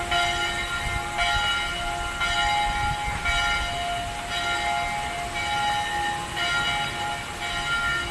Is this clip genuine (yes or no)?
yes